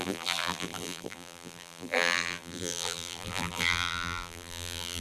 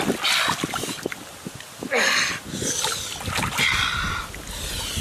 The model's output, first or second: first